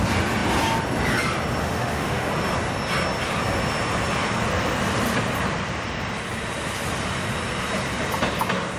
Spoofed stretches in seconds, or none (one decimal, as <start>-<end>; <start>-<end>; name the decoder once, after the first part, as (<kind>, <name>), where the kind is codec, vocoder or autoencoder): 1.6-2.3 (autoencoder, DAC-VAE)